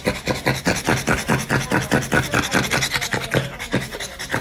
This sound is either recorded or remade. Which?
recorded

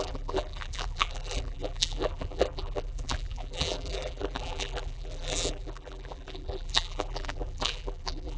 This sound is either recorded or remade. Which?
remade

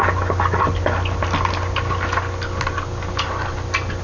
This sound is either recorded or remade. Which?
recorded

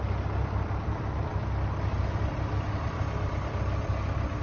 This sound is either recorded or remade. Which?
remade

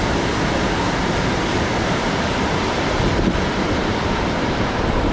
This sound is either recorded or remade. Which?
remade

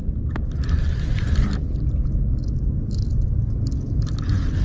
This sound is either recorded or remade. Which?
recorded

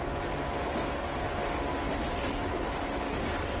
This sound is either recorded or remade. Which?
recorded